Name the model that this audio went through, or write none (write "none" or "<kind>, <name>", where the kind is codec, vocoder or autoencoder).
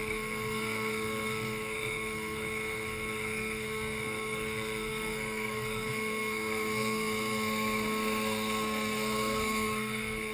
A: codec, SNAC